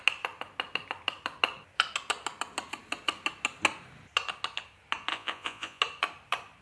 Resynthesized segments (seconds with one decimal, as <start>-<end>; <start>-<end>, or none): 5.1-5.8